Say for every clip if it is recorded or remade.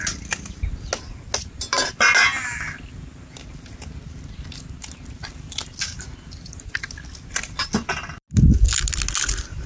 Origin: recorded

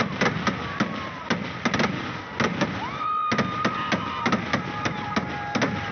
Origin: recorded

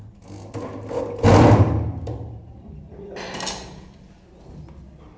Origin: recorded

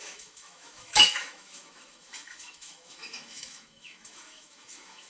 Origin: remade